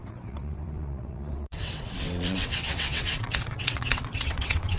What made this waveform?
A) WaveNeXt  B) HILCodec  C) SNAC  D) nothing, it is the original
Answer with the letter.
A